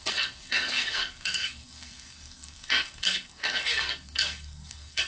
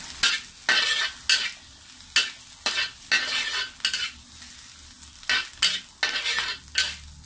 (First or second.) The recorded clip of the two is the second